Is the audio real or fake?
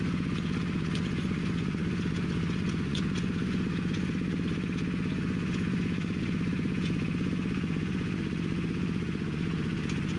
fake